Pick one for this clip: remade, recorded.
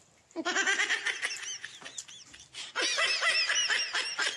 recorded